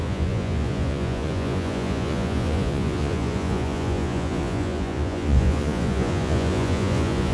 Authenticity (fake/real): fake